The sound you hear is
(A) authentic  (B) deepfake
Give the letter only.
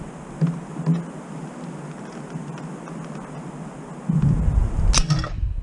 A